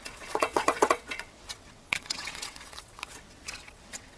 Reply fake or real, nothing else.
fake